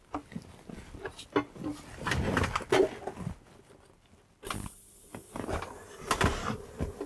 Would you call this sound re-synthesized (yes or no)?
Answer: no